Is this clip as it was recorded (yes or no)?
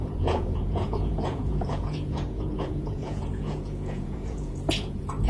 no